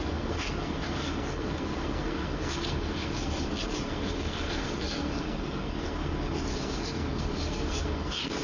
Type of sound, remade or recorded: remade